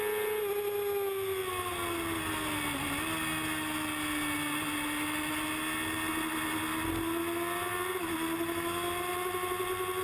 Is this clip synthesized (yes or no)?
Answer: no